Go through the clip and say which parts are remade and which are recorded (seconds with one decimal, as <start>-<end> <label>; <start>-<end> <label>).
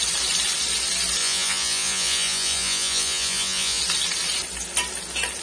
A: 0.0-1.2 recorded; 1.2-3.8 remade; 3.8-5.4 recorded